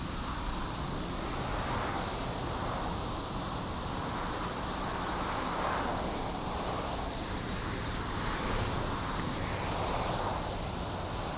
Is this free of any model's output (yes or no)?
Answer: yes